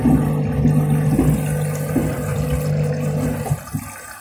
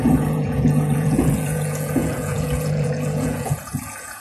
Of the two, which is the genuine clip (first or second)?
first